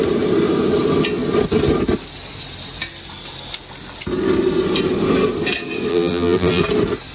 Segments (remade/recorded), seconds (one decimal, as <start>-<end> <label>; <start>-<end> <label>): 0.0-5.9 recorded; 5.9-6.6 remade; 6.6-7.1 recorded